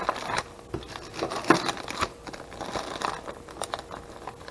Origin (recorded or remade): recorded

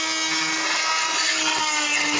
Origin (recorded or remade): recorded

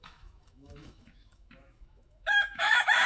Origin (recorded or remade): remade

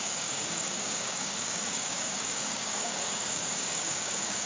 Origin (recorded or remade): remade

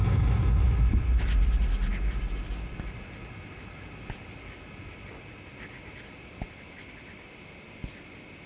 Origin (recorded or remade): recorded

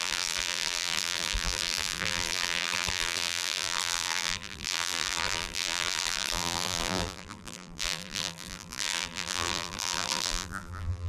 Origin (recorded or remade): remade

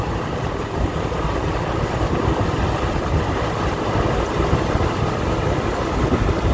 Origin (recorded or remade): recorded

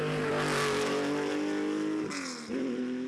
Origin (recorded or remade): recorded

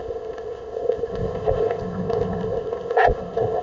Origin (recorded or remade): remade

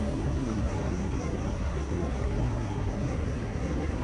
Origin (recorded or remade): remade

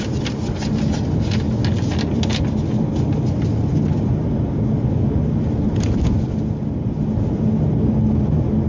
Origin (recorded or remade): recorded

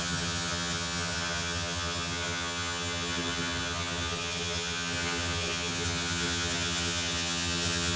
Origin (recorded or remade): remade